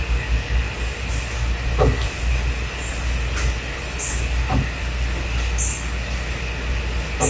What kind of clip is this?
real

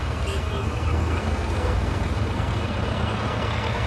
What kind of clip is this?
fake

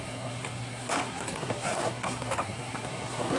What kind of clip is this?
fake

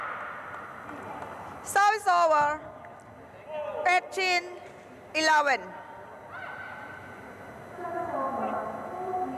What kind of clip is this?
real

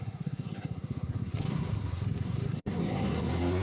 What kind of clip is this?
fake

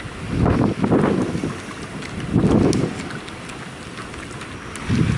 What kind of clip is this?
real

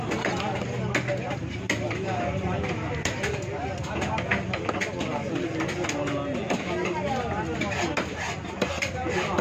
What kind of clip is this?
real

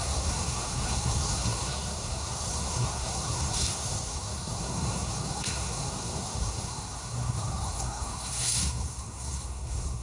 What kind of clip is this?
fake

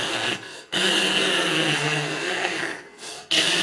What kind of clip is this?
fake